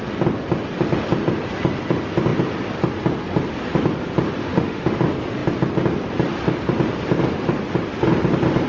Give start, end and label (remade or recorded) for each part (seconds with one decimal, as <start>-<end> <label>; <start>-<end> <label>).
0.0-4.4 recorded; 4.4-5.0 remade; 5.0-8.7 recorded